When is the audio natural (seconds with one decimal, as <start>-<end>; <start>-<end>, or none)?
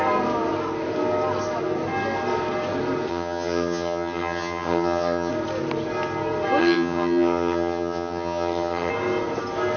0.0-3.1; 5.3-6.6; 8.9-9.8